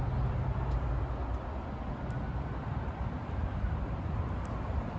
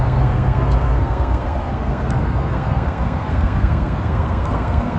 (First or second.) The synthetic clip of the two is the second